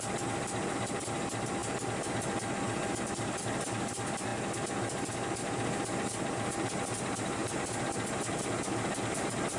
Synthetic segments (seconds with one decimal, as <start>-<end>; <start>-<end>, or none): none